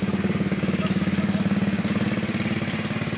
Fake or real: real